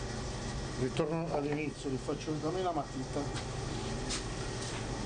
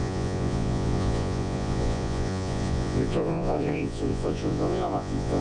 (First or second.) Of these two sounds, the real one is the first